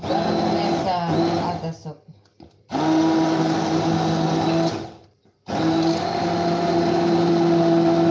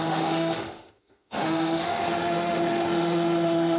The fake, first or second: second